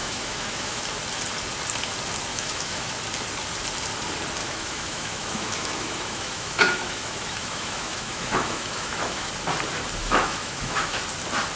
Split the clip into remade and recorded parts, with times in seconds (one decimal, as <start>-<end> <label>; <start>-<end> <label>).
0.0-0.8 remade; 0.8-2.3 recorded; 2.3-2.9 remade; 2.9-4.4 recorded; 4.4-9.3 remade; 9.3-10.0 recorded; 10.0-11.0 remade; 11.0-11.6 recorded